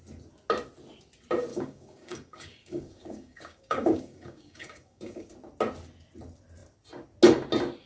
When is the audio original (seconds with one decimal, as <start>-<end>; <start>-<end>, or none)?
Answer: 0.0-1.5; 5.3-7.9